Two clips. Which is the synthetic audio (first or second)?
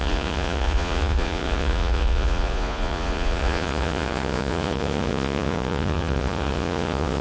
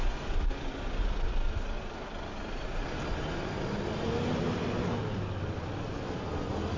first